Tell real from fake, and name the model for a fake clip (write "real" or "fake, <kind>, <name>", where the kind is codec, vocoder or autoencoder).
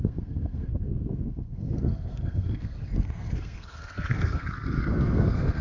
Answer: fake, codec, SNAC